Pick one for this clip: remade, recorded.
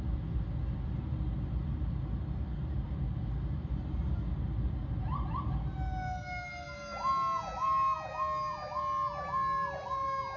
recorded